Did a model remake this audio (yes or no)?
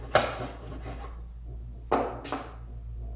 no